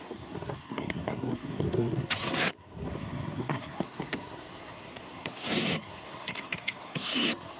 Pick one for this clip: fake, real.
fake